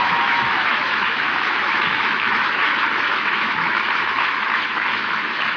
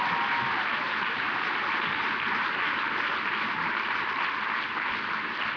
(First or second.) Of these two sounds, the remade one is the first